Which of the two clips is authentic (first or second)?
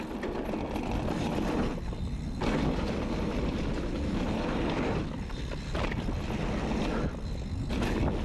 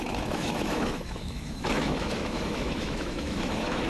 first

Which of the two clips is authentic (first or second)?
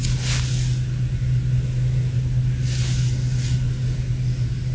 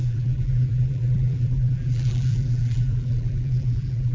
first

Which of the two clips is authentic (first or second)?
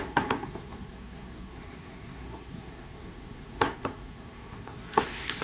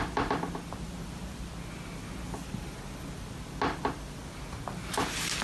second